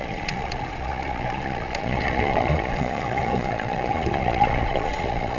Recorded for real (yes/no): no